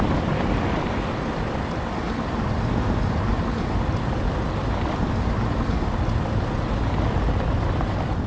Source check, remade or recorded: recorded